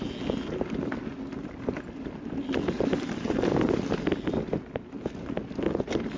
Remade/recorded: recorded